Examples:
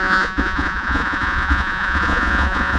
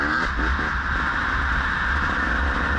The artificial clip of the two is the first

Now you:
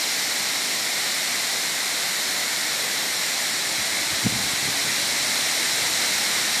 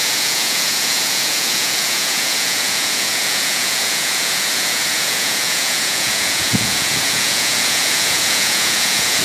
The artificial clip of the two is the second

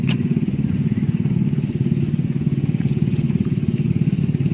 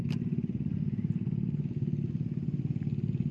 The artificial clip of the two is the first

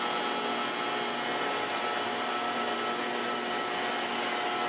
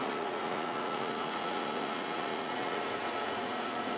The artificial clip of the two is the second